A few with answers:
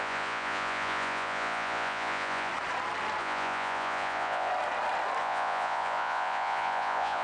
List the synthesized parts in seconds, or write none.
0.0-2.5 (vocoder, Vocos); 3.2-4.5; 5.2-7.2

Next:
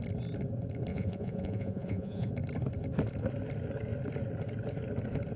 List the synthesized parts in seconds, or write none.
0.9-2.3 (vocoder, Vocos)

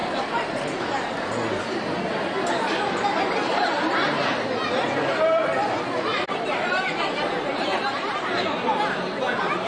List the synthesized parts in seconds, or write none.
0.0-0.8 (vocoder, BigVGAN v2); 6.1-6.9; 7.7-8.3

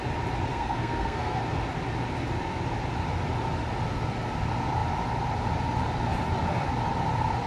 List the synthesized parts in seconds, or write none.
0.5-1.4 (codec, SNAC)